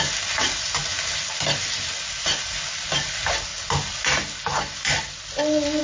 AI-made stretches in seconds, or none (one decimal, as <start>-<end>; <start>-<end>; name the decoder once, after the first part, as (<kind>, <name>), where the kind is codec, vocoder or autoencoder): none